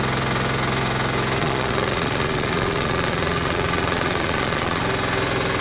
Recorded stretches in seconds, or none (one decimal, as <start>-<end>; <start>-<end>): 0.0-1.4; 4.8-5.6